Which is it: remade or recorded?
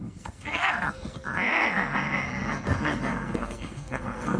remade